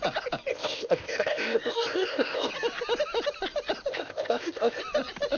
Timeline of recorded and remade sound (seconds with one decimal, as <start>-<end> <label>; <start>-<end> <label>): 0.0-0.5 recorded; 0.5-2.5 remade; 2.5-3.9 recorded; 3.9-4.8 remade; 4.8-5.4 recorded